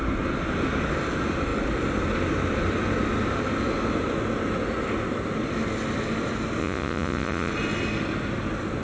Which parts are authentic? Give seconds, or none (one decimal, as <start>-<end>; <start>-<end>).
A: 0.0-6.6; 7.5-8.8